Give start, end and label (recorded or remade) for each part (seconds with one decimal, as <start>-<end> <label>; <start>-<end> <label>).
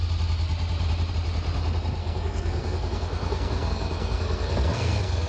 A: 0.0-2.0 recorded; 2.0-5.3 remade